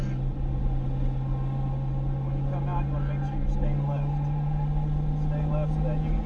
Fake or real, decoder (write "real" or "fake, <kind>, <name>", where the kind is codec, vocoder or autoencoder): real